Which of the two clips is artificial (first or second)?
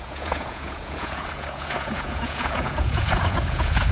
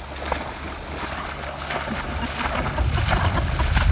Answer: first